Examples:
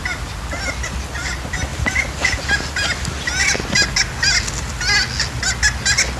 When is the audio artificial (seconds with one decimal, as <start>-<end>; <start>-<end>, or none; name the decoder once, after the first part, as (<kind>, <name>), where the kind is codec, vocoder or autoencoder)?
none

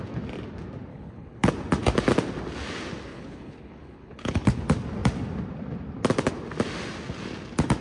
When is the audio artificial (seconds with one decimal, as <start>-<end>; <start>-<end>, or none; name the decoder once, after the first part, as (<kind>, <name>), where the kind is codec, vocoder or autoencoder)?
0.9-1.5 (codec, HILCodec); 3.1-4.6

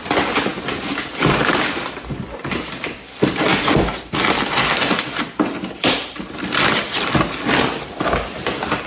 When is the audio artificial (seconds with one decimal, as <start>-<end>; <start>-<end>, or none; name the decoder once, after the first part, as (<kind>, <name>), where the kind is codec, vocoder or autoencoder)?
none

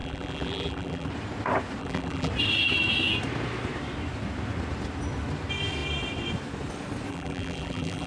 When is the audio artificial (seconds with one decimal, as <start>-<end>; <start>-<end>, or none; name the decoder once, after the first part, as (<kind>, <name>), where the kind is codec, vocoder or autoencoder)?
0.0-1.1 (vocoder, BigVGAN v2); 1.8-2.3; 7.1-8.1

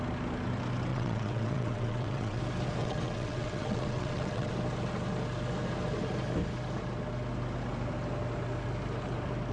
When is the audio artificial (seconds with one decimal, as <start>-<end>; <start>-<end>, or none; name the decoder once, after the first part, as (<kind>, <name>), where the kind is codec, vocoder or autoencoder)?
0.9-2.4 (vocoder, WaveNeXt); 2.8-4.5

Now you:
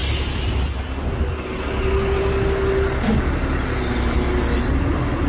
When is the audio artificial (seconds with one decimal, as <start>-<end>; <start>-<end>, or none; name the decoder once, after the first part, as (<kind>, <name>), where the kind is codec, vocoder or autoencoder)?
none

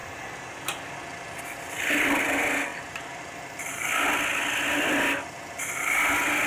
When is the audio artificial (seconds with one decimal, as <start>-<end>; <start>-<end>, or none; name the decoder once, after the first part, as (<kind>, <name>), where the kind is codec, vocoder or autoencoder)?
0.0-1.4 (vocoder, BigVGAN v2); 2.7-3.7